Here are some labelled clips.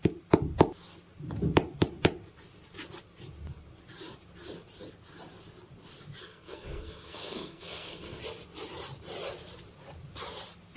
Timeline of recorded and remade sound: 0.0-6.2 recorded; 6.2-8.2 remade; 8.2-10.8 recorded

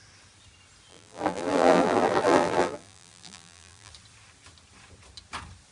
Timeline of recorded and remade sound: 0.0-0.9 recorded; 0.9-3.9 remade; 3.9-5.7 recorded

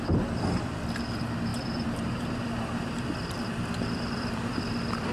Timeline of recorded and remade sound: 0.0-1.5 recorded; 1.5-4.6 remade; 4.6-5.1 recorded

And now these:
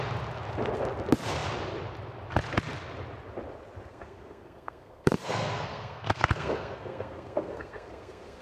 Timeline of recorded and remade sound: 0.0-3.9 recorded; 3.9-8.4 remade

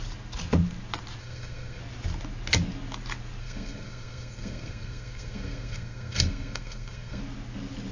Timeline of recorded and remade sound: 0.0-1.2 recorded; 1.2-1.8 remade; 1.8-3.4 recorded; 3.4-7.2 remade; 7.2-7.9 recorded

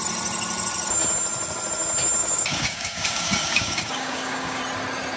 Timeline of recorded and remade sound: 0.0-2.2 recorded; 2.2-4.6 remade; 4.6-5.2 recorded

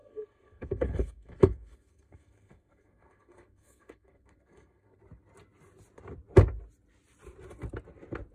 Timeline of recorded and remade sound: 0.0-5.0 remade; 5.0-8.3 recorded

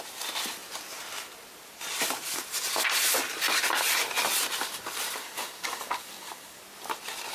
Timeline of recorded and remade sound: 0.0-5.2 recorded; 5.2-6.6 remade; 6.6-7.3 recorded